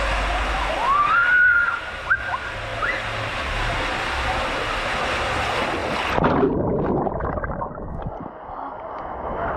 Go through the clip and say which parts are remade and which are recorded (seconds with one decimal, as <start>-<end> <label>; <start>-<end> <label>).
0.0-9.6 recorded